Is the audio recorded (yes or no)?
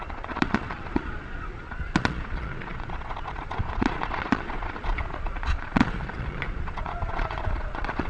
no